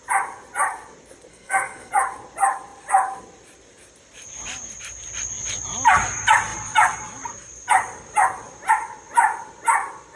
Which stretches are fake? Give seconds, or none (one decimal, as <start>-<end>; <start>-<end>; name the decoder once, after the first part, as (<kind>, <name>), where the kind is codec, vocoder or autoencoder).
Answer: 1.3-1.9 (codec, SNAC)